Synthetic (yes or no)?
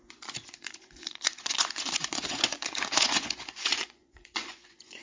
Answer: yes